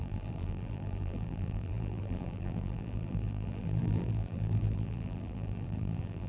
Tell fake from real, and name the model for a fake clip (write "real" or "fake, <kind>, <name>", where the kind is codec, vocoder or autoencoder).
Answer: fake, vocoder, BigVGAN v2